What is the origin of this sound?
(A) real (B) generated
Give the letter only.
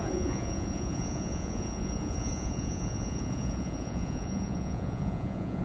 B